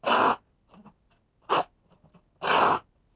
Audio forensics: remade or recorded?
recorded